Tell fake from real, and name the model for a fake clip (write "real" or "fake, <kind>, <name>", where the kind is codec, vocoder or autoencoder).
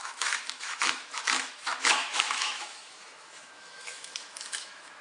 fake, autoencoder, DAC-VAE